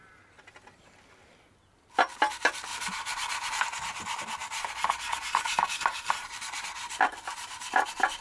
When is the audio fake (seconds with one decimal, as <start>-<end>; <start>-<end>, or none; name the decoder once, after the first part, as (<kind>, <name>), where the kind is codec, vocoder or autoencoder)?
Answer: 2.7-3.6 (vocoder, BigVGAN v2); 4.4-7.5